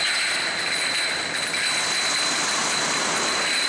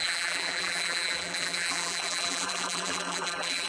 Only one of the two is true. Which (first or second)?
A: first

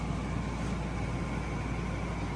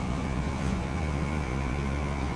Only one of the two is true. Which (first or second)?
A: first